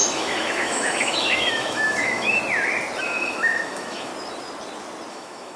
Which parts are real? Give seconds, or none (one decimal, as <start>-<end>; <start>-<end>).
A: 2.4-3.0; 4.1-5.1